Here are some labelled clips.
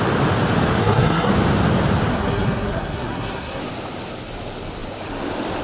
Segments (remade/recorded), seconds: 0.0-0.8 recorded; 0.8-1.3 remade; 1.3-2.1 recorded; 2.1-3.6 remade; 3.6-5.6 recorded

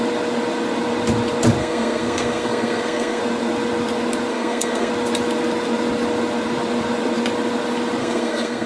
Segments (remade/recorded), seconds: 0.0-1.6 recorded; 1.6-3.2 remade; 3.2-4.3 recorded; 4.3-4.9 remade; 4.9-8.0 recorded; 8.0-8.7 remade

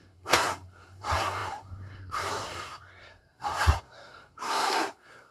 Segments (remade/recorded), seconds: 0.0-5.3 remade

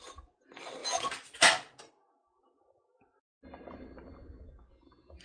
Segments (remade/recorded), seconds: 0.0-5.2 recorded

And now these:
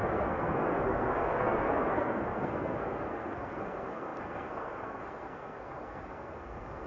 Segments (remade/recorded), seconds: 0.0-6.9 remade

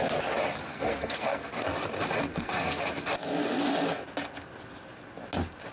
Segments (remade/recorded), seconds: 0.0-0.7 recorded; 0.7-1.5 remade; 1.5-2.3 recorded; 2.3-2.9 remade; 2.9-5.7 recorded

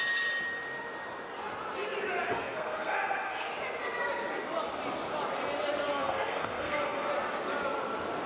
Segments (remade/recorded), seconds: 0.0-2.3 recorded; 2.3-3.5 remade; 3.5-5.9 recorded; 5.9-7.1 remade; 7.1-8.3 recorded

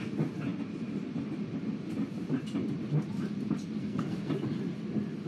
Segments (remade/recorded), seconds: 0.0-3.8 recorded; 3.8-4.3 remade; 4.3-5.3 recorded